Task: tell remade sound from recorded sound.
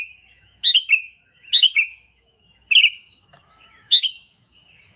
remade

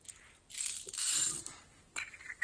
recorded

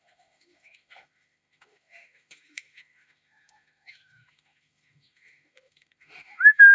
remade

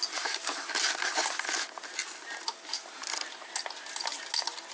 recorded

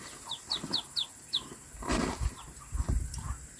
recorded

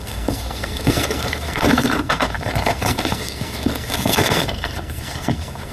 remade